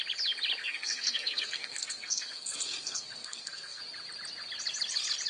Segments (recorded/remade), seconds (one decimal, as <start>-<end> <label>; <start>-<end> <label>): 0.0-0.6 recorded; 0.6-3.8 remade; 3.8-5.3 recorded